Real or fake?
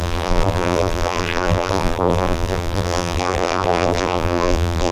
fake